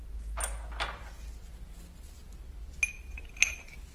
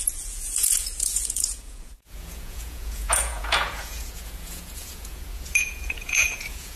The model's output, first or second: second